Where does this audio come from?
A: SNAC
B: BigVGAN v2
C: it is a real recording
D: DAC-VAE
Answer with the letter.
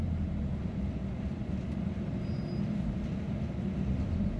C